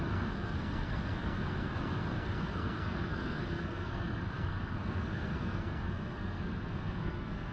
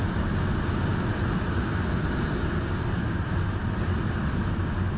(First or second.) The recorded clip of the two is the second